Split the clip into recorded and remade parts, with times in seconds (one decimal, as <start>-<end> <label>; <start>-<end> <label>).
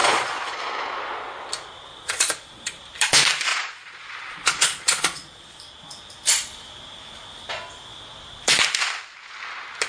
0.0-0.6 remade; 0.6-1.9 recorded; 1.9-2.8 remade; 2.8-3.5 recorded; 3.5-5.6 remade; 5.6-9.9 recorded